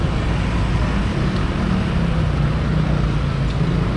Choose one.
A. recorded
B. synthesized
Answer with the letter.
A